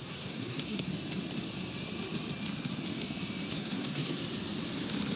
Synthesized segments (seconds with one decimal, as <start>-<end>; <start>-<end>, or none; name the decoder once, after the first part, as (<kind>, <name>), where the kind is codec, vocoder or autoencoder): 0.0-0.9 (codec, SNAC); 3.5-4.2